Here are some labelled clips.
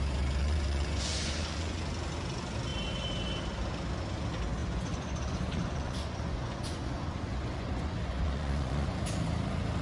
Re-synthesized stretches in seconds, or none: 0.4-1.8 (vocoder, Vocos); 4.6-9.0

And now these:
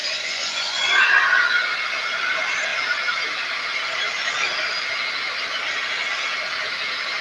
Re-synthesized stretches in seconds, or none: 0.0-1.0 (vocoder, Vocos)

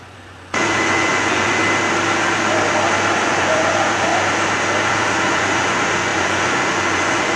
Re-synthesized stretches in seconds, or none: 0.0-1.6 (vocoder, Vocos); 3.2-4.1; 4.8-7.4

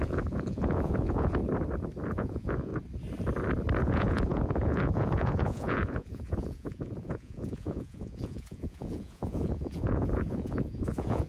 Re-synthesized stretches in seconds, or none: 0.0-1.4 (vocoder, Vocos); 2.1-2.7; 3.8-11.3

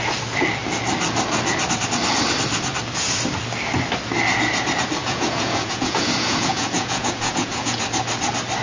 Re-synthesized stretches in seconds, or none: 5.0-7.8 (vocoder, Vocos)

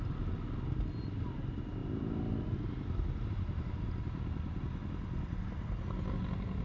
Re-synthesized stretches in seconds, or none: none

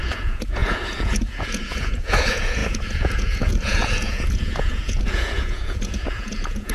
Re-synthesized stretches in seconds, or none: 0.0-6.7 (vocoder, Vocos)

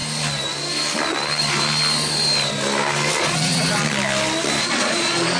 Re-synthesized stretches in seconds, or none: 3.2-3.8 (vocoder, Vocos); 4.6-5.4